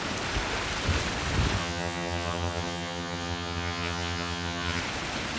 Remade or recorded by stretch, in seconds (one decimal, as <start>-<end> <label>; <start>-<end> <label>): 0.0-1.6 recorded; 1.6-4.8 remade; 4.8-5.4 recorded